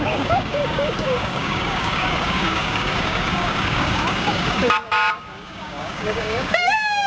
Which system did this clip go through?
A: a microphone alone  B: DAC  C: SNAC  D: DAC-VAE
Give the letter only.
B